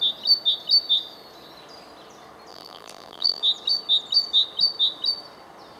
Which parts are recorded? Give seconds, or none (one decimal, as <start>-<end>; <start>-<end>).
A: 0.0-2.5; 3.4-5.8